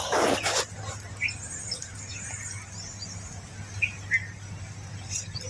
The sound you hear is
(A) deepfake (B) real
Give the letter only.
B